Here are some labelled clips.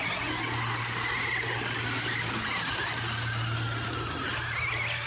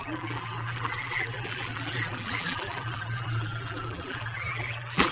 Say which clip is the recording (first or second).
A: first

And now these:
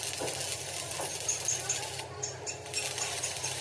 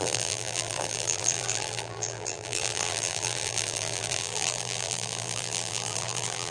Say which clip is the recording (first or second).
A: first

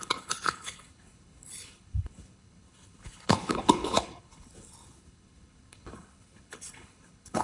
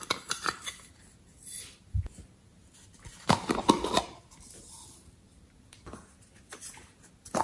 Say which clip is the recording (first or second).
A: second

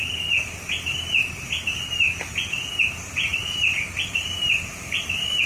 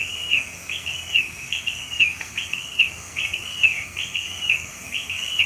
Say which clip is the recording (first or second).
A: first